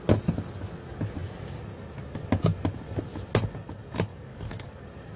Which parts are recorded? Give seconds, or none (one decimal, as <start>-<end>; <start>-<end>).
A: 0.0-4.1; 4.8-5.2